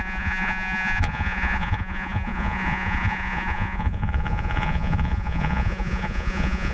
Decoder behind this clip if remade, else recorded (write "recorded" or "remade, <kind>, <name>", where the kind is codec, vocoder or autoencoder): remade, vocoder, Vocos